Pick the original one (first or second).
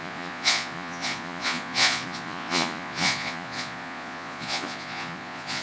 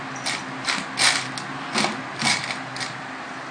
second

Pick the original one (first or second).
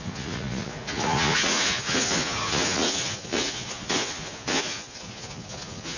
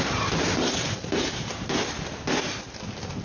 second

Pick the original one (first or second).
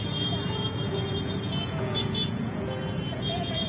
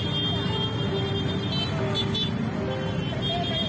second